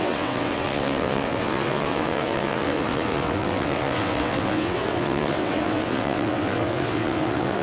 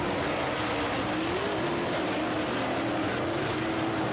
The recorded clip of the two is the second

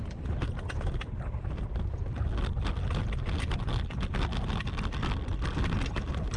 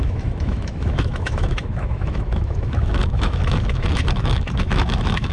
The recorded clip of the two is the first